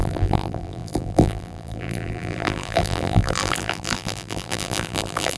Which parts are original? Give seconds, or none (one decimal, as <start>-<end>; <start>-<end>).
none